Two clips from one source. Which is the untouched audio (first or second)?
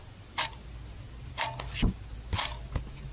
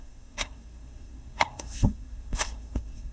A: first